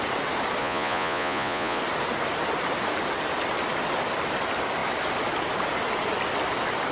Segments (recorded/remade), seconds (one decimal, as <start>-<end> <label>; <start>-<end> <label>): 0.0-0.6 recorded; 0.6-1.8 remade; 1.8-6.9 recorded